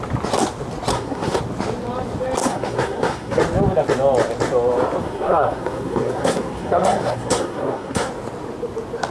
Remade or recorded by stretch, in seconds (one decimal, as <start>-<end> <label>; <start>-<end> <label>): 0.0-0.9 recorded; 0.9-1.4 remade; 1.4-2.4 recorded; 2.4-3.4 remade; 3.4-5.0 recorded; 5.0-8.1 remade; 8.1-9.1 recorded